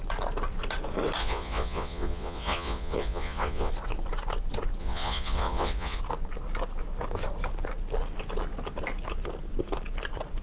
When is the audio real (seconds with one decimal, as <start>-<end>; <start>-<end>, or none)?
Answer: 0.0-1.2; 3.7-4.8; 6.0-10.4